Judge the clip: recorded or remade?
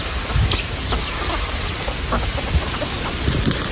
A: recorded